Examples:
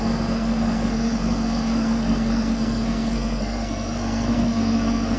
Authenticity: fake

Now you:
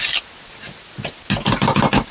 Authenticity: real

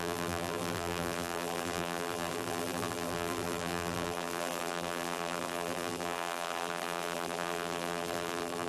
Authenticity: fake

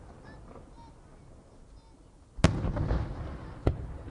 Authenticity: real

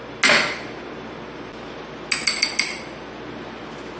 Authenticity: real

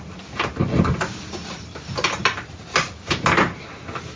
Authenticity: real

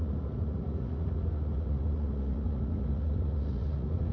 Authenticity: fake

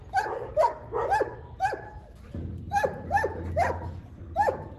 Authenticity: real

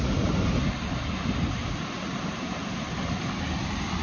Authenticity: real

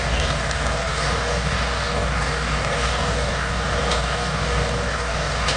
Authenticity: fake